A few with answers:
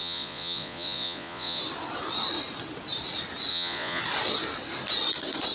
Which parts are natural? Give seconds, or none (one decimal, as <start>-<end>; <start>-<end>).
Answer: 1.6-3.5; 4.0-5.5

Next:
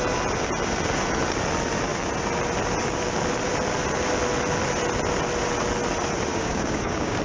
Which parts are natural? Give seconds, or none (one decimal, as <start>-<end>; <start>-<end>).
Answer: 0.0-6.3

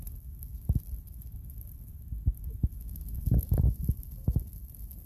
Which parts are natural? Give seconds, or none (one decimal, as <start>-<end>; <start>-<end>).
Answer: 0.0-5.1